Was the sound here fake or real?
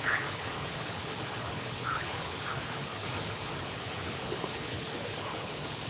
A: fake